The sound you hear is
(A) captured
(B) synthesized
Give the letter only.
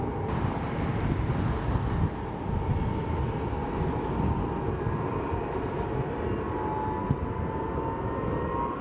A